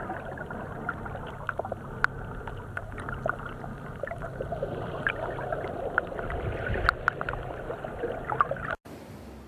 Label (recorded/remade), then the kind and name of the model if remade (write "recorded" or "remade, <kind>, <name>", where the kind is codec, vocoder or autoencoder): remade, vocoder, BigVGAN v2